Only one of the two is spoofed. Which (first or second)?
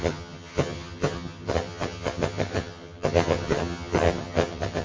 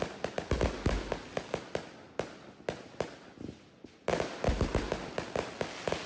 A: first